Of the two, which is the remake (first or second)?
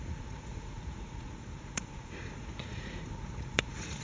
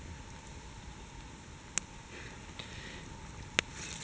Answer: first